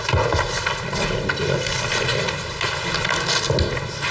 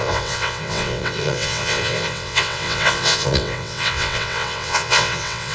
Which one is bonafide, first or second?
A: first